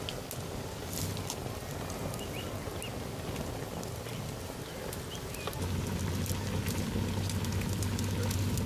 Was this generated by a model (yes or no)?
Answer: no